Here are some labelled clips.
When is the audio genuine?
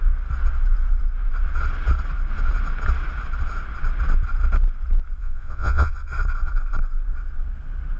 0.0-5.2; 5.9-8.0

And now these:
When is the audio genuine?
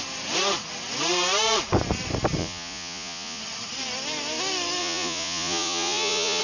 0.0-2.4; 3.4-4.8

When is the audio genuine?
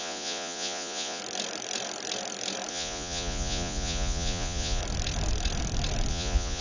1.2-2.7; 4.8-6.1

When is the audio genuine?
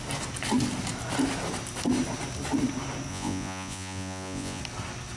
0.0-3.1; 4.6-5.2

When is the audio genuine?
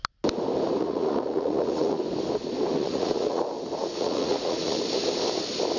0.0-0.8; 2.0-2.7; 3.4-3.8; 4.8-5.8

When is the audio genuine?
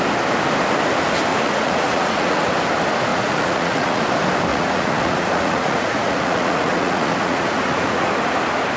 0.0-1.3; 2.5-3.1; 4.0-4.5; 8.1-8.8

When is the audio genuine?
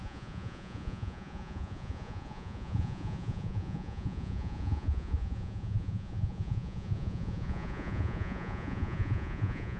none